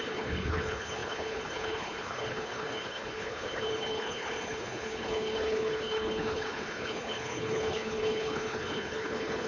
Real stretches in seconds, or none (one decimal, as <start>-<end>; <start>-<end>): none